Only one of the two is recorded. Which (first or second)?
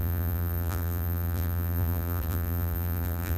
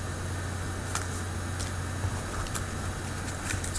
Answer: second